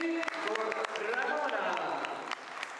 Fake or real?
real